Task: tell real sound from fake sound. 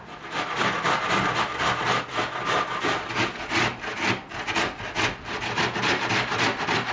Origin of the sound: real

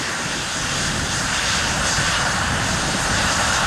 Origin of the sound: fake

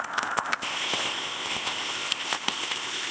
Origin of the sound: fake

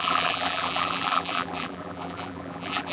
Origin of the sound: fake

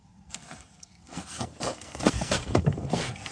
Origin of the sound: fake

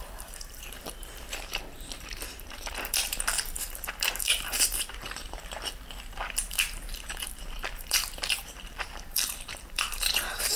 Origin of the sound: fake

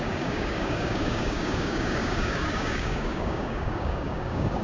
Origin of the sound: fake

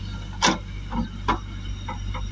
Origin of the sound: real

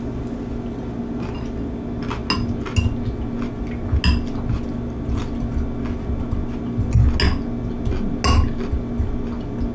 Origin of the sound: real